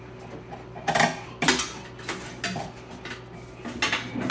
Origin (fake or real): real